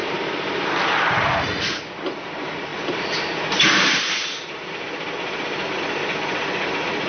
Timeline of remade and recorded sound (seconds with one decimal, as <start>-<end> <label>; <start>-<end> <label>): 0.0-0.6 remade; 0.6-2.7 recorded; 2.7-5.8 remade; 5.8-7.1 recorded